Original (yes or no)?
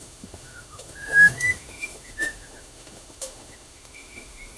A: no